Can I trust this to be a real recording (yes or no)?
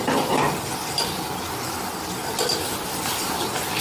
no